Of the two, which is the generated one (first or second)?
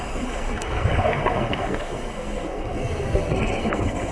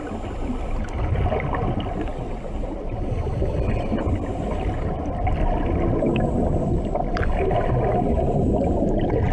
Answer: first